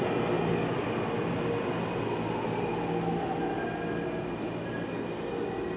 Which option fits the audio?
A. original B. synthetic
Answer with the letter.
A